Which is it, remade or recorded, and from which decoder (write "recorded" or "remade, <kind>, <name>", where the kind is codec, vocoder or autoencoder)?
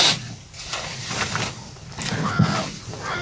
recorded